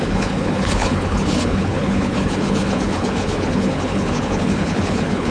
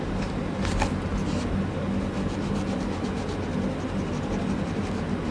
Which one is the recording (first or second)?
second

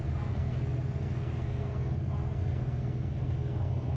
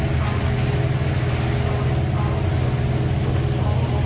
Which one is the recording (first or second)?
second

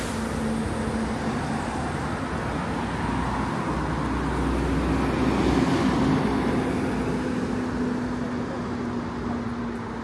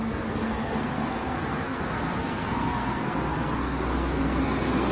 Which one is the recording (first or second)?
first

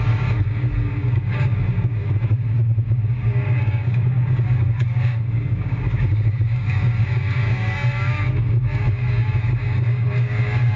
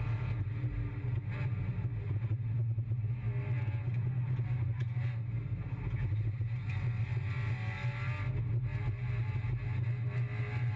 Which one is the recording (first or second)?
second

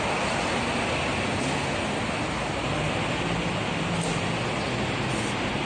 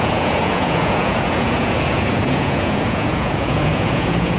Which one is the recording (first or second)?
first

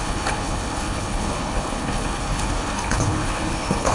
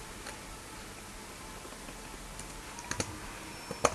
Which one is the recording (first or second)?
second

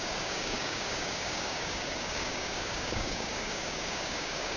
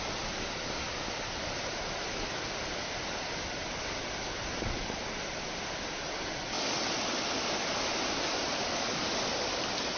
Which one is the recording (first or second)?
second